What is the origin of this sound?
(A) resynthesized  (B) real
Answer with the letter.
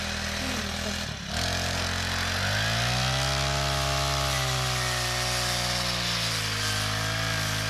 B